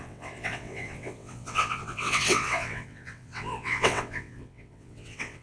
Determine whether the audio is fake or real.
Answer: fake